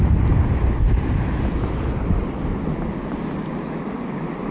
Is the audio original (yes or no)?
yes